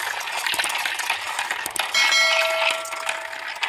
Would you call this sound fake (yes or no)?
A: no